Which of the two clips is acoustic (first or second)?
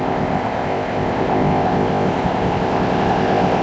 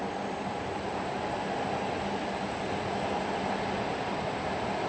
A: second